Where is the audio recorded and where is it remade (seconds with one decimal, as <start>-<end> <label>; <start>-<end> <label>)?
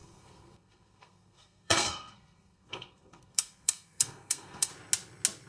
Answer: 0.0-4.7 remade; 4.7-5.5 recorded